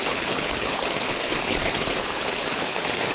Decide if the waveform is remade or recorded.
remade